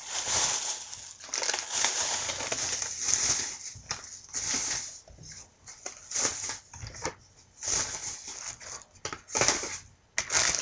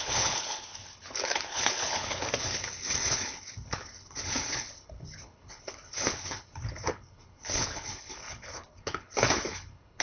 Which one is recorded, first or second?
first